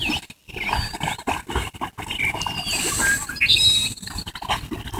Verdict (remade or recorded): recorded